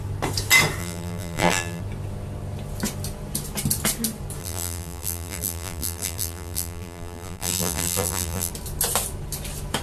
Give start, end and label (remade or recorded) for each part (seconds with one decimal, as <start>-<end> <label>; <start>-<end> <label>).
0.0-0.8 recorded; 0.8-1.8 remade; 1.8-4.4 recorded; 4.4-8.5 remade; 8.5-9.8 recorded

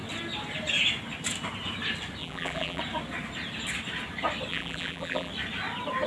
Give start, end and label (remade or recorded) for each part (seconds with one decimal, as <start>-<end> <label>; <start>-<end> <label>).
0.0-2.2 recorded; 2.2-2.8 remade; 2.8-4.5 recorded; 4.5-5.3 remade; 5.3-6.1 recorded

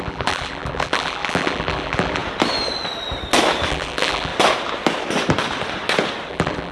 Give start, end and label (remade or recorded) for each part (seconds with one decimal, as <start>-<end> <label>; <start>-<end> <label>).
0.0-2.2 remade; 2.2-3.7 recorded; 3.7-4.3 remade; 4.3-6.3 recorded; 6.3-6.7 remade

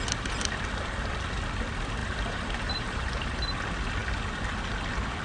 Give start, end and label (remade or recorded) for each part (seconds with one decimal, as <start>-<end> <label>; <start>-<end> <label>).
0.0-2.0 recorded; 2.0-3.3 remade; 3.3-5.2 recorded

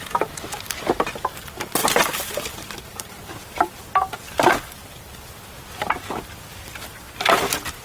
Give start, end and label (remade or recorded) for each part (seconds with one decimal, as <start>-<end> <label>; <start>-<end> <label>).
0.0-1.8 recorded; 1.8-3.8 remade; 3.8-7.8 recorded